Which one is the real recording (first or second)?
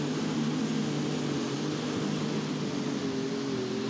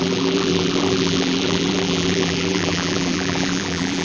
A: first